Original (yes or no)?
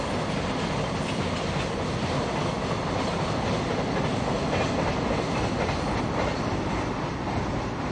yes